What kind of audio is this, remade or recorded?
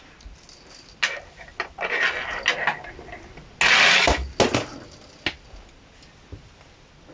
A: recorded